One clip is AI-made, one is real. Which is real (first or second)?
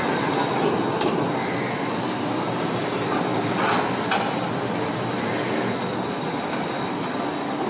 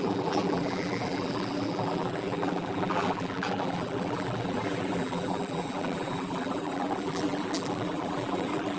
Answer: first